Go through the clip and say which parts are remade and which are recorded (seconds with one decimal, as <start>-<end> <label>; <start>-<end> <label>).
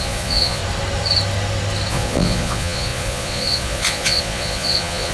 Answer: 0.0-0.6 remade; 0.6-1.9 recorded; 1.9-5.1 remade